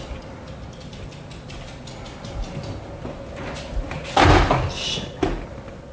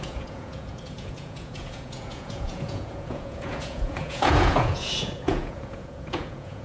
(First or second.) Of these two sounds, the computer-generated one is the second